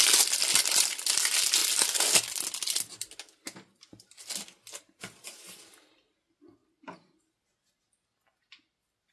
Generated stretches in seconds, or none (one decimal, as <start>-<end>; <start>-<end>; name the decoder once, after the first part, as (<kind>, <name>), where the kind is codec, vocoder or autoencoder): none